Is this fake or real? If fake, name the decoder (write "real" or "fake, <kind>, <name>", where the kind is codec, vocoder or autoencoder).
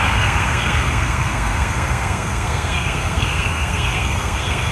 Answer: fake, codec, SNAC